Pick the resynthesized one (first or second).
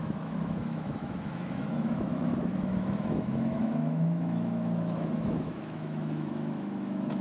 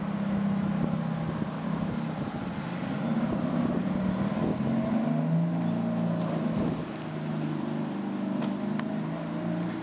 first